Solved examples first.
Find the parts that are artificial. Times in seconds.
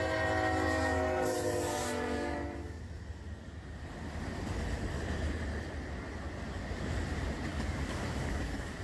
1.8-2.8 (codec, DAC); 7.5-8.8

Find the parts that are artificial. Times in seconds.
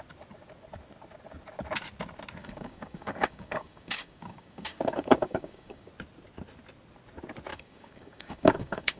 2.4-5.9 (codec, DAC); 7.5-9.0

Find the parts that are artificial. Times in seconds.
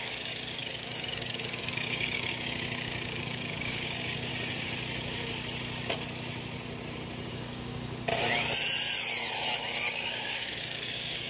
0.0-4.3 (codec, DAC); 7.3-8.1; 10.1-11.3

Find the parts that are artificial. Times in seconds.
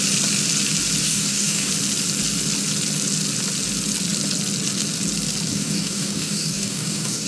1.0-1.7 (codec, DAC); 5.5-7.3